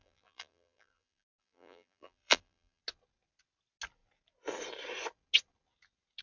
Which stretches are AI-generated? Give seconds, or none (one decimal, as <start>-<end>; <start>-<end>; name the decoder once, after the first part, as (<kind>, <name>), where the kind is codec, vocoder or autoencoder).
0.0-2.8 (vocoder, BigVGAN v2)